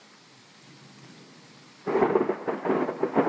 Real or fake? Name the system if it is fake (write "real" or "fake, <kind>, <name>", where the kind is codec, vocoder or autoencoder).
real